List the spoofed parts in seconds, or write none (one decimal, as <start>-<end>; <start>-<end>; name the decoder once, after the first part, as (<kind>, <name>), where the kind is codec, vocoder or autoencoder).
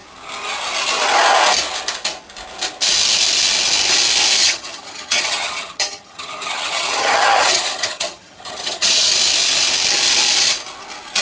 4.4-9.1 (vocoder, HiFi-GAN)